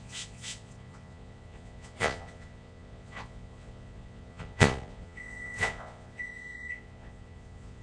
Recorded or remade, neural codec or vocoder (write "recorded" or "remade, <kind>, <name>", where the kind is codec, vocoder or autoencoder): remade, vocoder, Vocos